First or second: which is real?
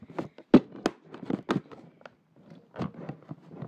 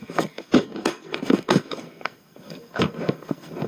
first